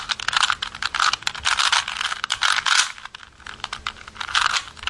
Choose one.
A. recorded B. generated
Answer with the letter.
A